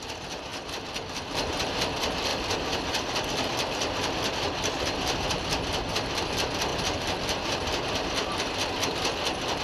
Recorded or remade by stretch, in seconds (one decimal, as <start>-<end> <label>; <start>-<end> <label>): 0.0-6.7 remade; 6.7-9.6 recorded